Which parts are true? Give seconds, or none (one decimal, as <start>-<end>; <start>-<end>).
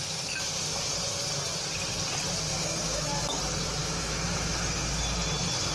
0.0-2.5; 3.4-3.8; 4.5-5.7